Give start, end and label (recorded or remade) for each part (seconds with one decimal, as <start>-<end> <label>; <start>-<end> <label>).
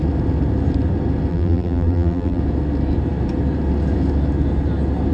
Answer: 0.0-1.3 recorded; 1.3-2.4 remade; 2.4-5.1 recorded